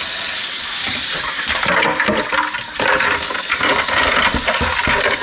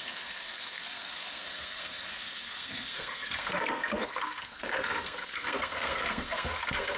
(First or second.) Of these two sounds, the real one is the first